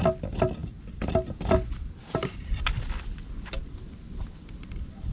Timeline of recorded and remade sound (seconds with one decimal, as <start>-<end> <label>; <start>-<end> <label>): 0.0-5.1 recorded